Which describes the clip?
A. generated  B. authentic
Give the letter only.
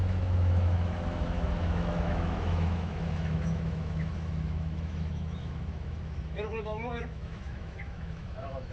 A